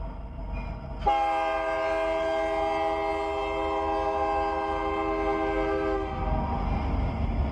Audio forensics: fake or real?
real